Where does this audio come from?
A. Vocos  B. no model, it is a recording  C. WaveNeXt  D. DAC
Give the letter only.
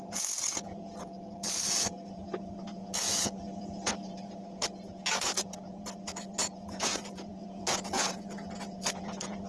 A